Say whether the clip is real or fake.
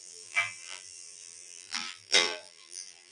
fake